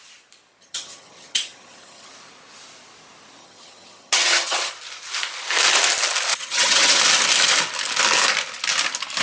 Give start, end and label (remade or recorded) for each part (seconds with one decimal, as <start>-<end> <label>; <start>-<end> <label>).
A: 0.0-0.6 recorded; 0.6-2.1 remade; 2.1-3.4 recorded; 3.4-4.7 remade; 4.7-6.3 recorded; 6.3-7.0 remade; 7.0-9.2 recorded

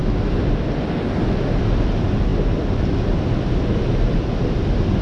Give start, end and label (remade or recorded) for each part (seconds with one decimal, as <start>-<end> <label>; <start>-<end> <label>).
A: 0.0-5.0 recorded